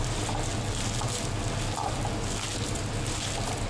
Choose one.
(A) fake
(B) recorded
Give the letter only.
B